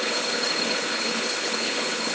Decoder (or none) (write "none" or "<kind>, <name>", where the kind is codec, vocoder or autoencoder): codec, HILCodec